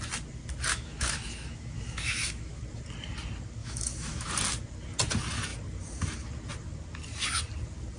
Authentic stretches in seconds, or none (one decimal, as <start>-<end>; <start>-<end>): 0.0-0.7; 2.6-3.6; 4.3-8.0